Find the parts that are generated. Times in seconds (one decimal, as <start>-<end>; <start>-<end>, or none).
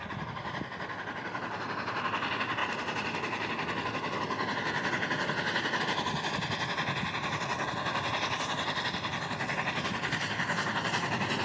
none